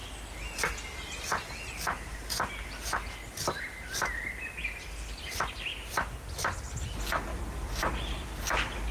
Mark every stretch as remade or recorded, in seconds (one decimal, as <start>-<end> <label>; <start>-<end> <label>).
0.0-4.6 recorded; 4.6-5.2 remade; 5.2-5.7 recorded; 5.7-6.3 remade; 6.3-7.3 recorded; 7.3-7.8 remade; 7.8-8.9 recorded